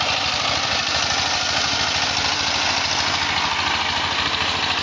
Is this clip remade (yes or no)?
no